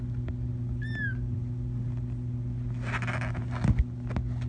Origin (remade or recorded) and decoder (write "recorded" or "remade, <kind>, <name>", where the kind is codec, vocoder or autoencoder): recorded